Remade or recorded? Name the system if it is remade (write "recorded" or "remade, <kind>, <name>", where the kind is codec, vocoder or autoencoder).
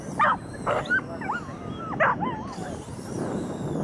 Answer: recorded